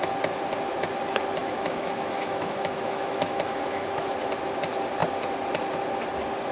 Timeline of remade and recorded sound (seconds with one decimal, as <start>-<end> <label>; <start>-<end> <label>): 0.0-1.4 recorded; 1.4-4.0 remade; 4.0-6.5 recorded